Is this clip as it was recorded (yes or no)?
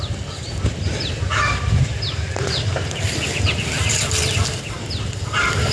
yes